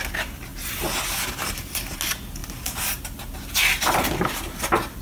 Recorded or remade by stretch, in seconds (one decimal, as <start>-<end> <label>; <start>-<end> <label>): 0.0-5.0 recorded